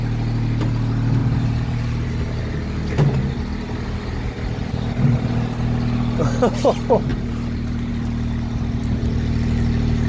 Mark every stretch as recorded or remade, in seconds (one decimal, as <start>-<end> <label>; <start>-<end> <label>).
0.0-1.2 recorded; 1.2-2.4 remade; 2.4-7.1 recorded; 7.1-7.9 remade; 7.9-10.1 recorded